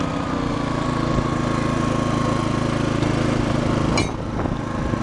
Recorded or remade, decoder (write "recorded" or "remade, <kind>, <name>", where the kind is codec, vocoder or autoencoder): recorded